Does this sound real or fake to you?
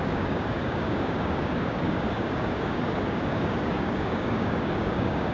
fake